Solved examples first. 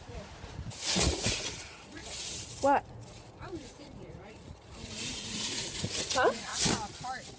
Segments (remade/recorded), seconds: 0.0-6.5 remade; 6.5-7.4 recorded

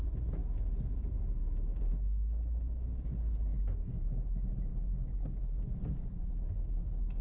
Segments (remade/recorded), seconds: 0.0-4.7 recorded; 4.7-5.8 remade; 5.8-7.2 recorded

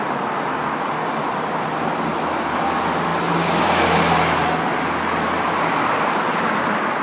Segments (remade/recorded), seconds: 0.0-7.0 recorded

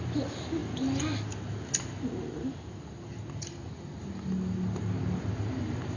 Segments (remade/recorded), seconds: 0.0-6.0 recorded

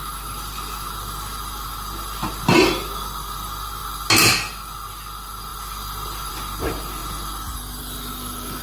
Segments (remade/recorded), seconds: 0.0-8.6 recorded

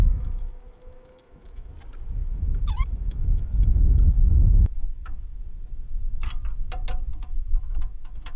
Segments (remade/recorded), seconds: 0.0-1.7 remade; 1.7-2.2 recorded; 2.2-5.4 remade; 5.4-7.1 recorded; 7.1-8.4 remade

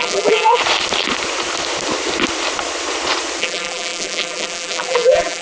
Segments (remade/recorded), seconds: 0.0-0.6 remade; 0.6-3.4 recorded; 3.4-5.4 remade

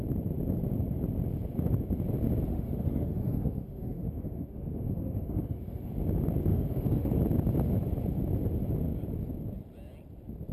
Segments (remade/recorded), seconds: 0.0-2.5 recorded; 2.5-5.9 remade; 5.9-6.5 recorded; 6.5-7.2 remade; 7.2-10.5 recorded